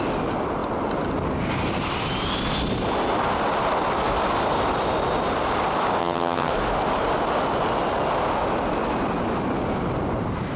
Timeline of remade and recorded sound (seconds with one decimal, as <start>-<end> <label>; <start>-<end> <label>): 0.0-6.0 recorded; 6.0-6.5 remade; 6.5-10.6 recorded